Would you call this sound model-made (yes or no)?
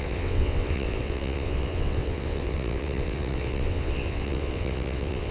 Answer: yes